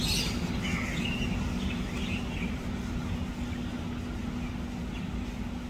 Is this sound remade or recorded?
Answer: recorded